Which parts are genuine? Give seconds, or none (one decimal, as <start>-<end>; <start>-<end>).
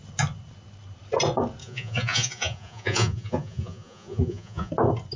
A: 0.0-1.6; 4.7-5.2